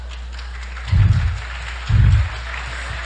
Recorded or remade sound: recorded